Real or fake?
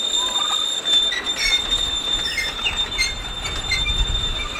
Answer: real